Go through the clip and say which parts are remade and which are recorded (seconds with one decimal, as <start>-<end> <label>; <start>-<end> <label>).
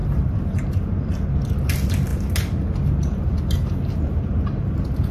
0.0-5.1 recorded